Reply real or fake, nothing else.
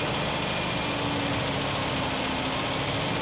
real